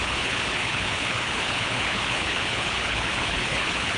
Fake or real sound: fake